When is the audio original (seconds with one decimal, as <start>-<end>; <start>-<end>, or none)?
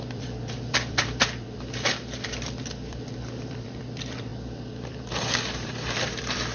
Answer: 4.3-5.1